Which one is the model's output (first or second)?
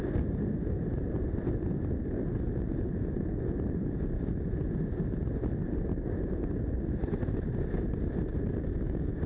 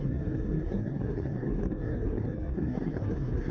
second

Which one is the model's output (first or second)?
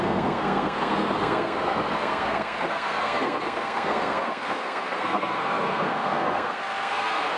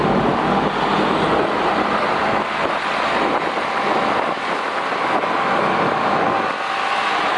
first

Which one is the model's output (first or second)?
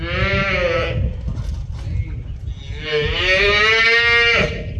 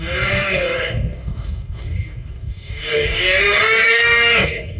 second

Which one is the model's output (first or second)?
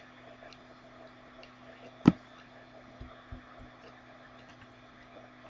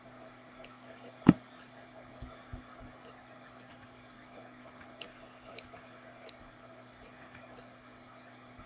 second